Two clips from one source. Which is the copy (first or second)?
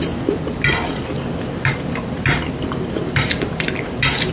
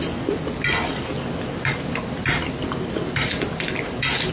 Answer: first